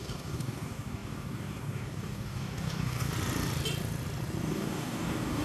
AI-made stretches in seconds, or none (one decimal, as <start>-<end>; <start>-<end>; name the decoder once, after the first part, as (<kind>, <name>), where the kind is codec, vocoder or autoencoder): 0.0-3.1 (codec, DAC); 4.5-5.4